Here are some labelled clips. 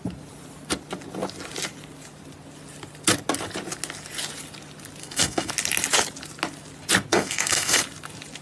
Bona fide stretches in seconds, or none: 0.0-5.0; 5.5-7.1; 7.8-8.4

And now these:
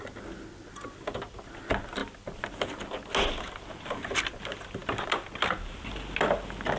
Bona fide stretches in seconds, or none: 0.0-6.8

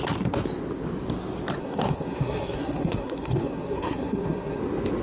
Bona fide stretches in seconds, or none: 0.0-1.6; 4.6-5.0

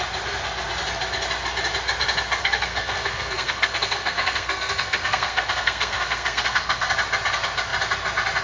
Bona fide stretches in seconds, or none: 0.0-2.4; 6.9-8.4

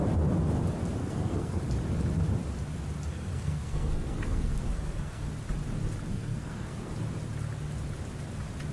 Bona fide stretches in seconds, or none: 0.0-1.0; 1.6-3.1; 5.3-6.1; 6.9-8.7

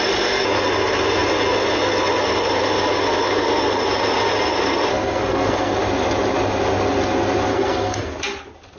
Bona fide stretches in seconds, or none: 0.0-4.9; 5.8-7.5; 8.1-8.8